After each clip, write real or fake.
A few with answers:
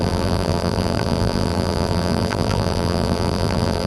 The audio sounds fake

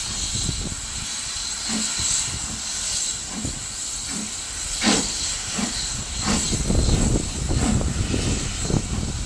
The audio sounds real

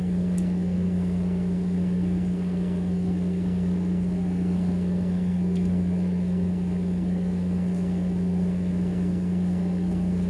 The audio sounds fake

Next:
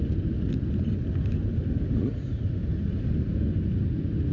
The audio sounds real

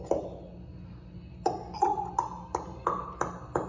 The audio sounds real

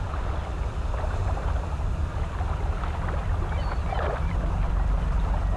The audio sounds real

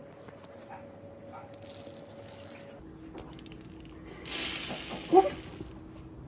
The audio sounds real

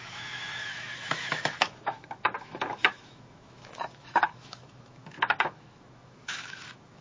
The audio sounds fake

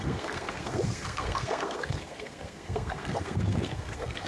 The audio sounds fake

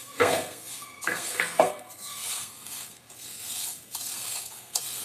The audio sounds fake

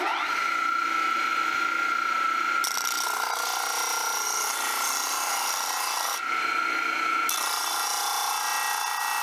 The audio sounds real